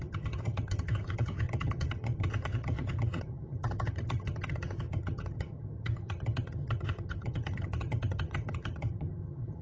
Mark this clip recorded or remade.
remade